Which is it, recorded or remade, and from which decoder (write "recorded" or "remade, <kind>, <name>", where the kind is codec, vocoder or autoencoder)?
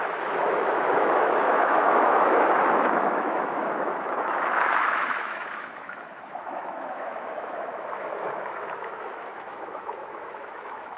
remade, autoencoder, DAC-VAE